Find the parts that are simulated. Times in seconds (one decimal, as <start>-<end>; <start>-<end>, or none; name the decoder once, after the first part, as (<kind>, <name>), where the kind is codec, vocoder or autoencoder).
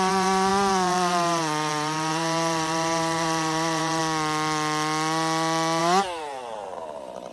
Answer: 0.0-4.0 (vocoder, BigVGAN v2); 5.8-7.3